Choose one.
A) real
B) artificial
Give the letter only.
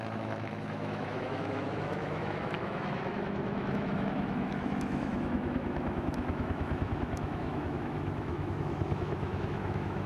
B